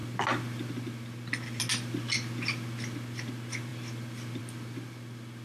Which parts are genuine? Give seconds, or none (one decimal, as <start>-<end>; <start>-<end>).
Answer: 0.0-5.4